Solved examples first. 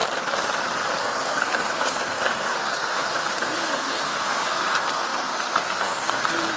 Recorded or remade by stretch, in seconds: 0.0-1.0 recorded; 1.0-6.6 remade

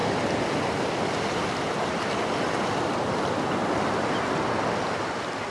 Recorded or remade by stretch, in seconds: 0.0-5.5 recorded

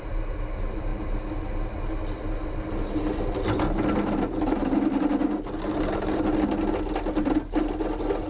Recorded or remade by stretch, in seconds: 0.0-8.3 recorded

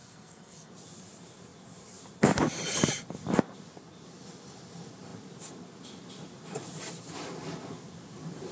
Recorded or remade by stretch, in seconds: 0.0-0.7 remade; 0.7-8.5 recorded

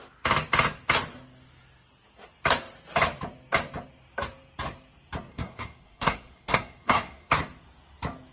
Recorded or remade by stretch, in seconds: 0.0-5.3 recorded; 5.3-7.3 remade; 7.3-8.3 recorded

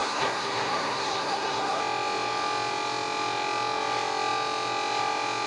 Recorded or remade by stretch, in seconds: 0.0-1.8 remade; 1.8-5.5 recorded

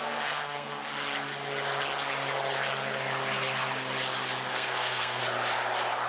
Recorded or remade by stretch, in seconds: 0.0-0.8 remade; 0.8-4.5 recorded; 4.5-5.2 remade; 5.2-6.1 recorded